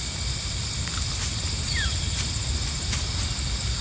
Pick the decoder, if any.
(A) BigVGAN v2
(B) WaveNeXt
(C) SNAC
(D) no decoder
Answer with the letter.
D